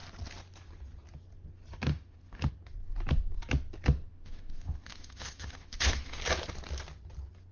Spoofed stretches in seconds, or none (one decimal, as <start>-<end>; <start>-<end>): 1.9-2.5; 4.1-6.2